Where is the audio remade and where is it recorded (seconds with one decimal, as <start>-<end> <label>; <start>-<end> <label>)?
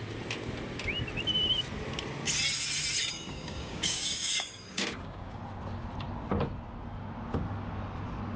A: 0.0-3.1 recorded; 3.1-5.4 remade; 5.4-8.4 recorded